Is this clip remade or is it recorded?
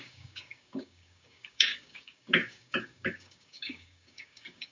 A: remade